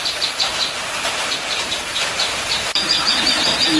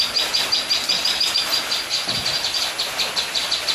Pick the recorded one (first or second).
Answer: second